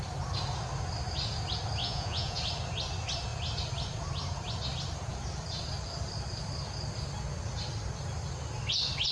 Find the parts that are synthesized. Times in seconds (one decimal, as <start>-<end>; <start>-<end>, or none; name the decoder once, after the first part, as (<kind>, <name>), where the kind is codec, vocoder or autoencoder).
1.8-2.4 (vocoder, Vocos)